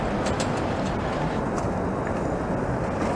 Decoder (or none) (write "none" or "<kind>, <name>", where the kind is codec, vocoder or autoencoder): none